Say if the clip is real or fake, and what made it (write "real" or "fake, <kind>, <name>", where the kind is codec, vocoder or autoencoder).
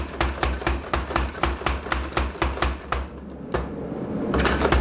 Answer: real